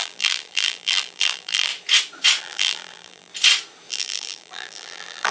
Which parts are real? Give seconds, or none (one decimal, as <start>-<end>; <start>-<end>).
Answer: 1.7-2.4; 3.3-3.9